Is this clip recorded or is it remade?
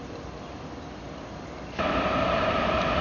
recorded